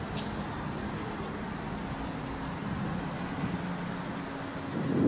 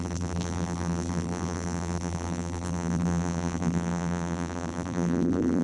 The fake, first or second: second